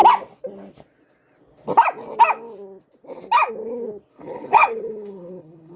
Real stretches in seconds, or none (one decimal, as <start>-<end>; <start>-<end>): 0.0-4.1